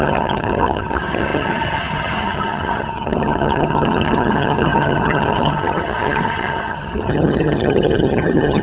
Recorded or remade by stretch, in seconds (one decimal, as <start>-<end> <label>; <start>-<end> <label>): 0.0-8.6 remade